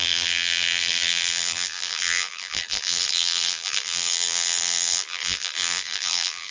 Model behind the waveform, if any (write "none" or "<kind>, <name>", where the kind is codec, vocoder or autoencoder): vocoder, BigVGAN v2